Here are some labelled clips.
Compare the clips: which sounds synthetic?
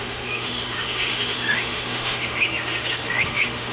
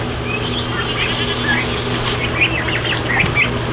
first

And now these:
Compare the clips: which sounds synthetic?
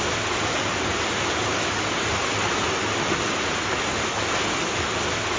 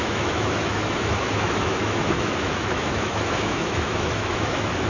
second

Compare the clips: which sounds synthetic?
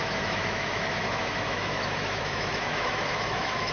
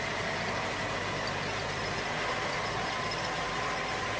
first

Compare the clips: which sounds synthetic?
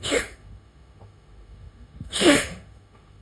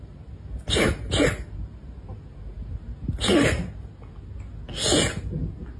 first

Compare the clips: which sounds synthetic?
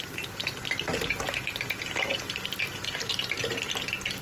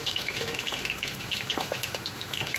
second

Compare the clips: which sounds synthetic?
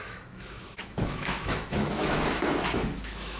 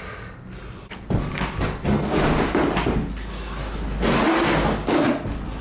first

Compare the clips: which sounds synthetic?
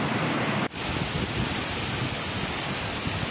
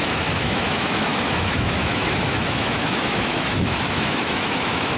second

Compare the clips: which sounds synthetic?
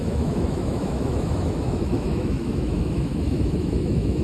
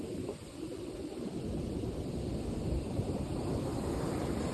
first